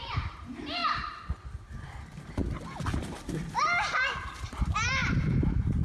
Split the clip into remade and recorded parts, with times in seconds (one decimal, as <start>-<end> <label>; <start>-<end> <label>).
0.0-0.8 remade; 0.8-2.0 recorded; 2.0-2.4 remade; 2.4-3.6 recorded; 3.6-5.8 remade